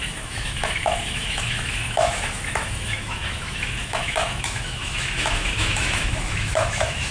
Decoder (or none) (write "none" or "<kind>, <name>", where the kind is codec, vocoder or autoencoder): autoencoder, DAC-VAE